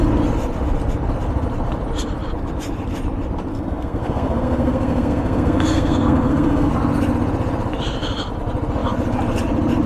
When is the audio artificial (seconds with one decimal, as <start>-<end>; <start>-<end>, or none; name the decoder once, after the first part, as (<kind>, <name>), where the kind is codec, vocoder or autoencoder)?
3.5-6.7 (codec, SNAC)